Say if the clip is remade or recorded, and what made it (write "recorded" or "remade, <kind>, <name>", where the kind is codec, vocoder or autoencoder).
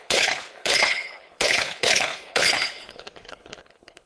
remade, codec, HILCodec